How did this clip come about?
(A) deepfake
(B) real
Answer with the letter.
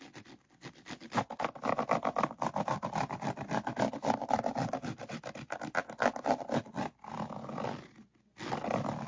A